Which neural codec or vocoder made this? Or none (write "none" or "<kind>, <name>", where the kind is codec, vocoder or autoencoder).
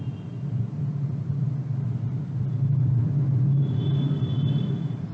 vocoder, BigVGAN v2